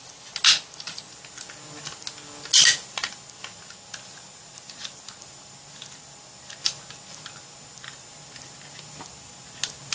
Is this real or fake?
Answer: real